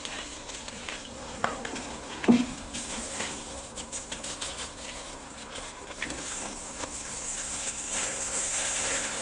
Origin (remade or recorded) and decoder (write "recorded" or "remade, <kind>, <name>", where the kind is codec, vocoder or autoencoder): remade, codec, SNAC